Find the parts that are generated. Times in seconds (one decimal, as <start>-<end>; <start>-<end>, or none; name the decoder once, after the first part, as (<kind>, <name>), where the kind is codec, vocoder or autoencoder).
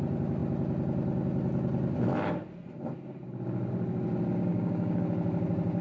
4.5-5.0 (codec, DAC)